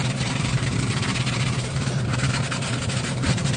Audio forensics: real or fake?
fake